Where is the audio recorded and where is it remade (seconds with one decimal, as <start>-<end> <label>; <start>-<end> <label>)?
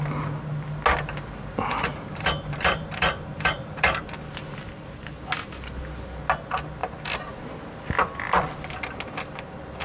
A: 0.0-1.9 recorded; 1.9-4.0 remade; 4.0-9.8 recorded